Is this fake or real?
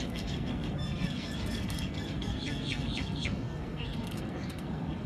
fake